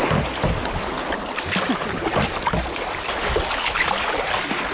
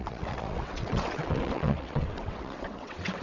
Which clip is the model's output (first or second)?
second